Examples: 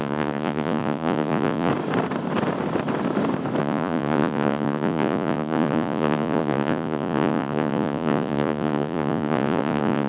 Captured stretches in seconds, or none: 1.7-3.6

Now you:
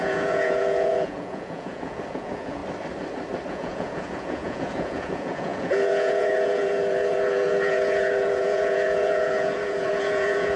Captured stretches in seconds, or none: 2.6-3.5

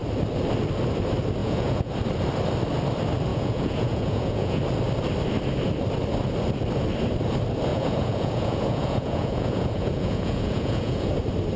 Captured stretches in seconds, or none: 0.0-1.4; 1.9-3.3; 4.6-7.7; 11.1-11.6

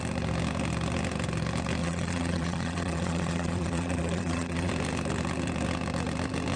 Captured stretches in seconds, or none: 0.0-1.8; 4.7-6.6

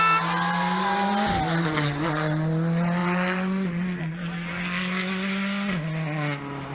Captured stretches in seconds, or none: 0.0-6.7

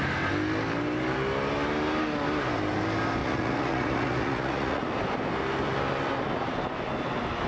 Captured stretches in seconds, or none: 0.0-3.2; 4.9-7.5

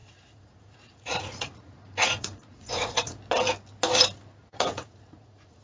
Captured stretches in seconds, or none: 3.2-4.4

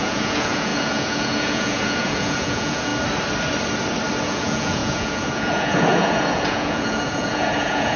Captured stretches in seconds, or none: 2.9-4.2